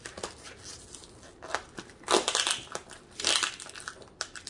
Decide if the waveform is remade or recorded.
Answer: recorded